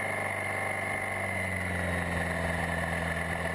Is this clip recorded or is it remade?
recorded